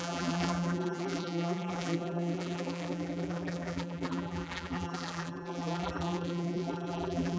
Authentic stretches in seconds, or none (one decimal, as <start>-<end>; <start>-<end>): none

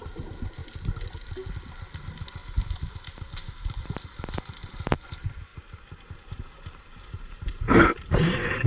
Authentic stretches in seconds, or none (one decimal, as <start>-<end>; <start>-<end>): 0.6-1.7; 2.4-3.3

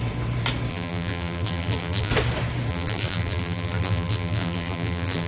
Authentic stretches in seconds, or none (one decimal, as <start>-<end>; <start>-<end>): 0.0-0.7; 2.1-2.7

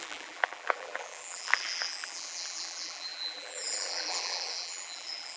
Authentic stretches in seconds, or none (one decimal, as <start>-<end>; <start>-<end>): none

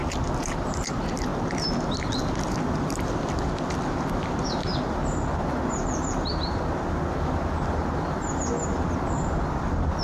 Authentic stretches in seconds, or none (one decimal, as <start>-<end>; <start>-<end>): 0.0-10.0